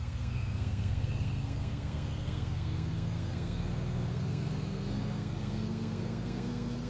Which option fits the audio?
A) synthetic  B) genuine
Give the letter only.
A